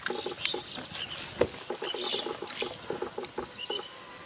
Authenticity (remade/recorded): recorded